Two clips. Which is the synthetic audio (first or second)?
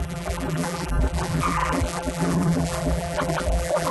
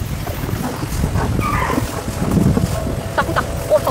first